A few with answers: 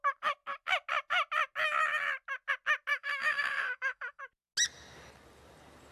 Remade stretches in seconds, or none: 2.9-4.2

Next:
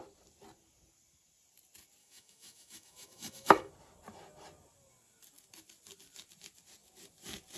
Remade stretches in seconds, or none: 2.0-3.7

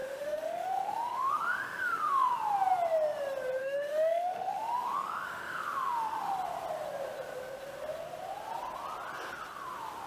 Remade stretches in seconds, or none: 0.0-2.3; 3.6-6.3

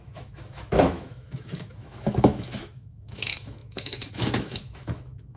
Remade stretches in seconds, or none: 0.0-5.4

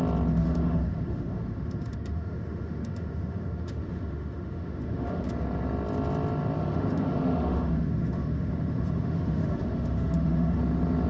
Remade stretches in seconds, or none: 0.4-5.3; 6.6-10.6

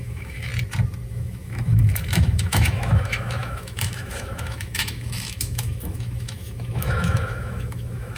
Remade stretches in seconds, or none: 0.0-0.5; 1.1-8.2